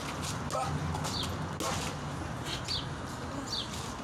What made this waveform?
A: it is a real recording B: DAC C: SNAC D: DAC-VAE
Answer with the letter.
A